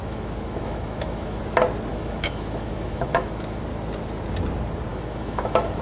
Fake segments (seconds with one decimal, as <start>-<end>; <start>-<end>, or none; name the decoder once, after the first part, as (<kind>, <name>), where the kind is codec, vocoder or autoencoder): 0.0-1.4 (autoencoder, DAC-VAE); 1.9-3.6; 4.9-5.8